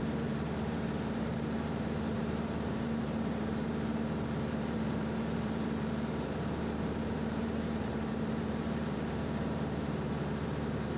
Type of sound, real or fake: fake